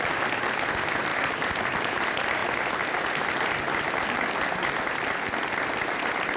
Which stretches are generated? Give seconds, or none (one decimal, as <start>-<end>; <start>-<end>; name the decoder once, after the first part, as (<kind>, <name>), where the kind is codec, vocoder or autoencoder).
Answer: none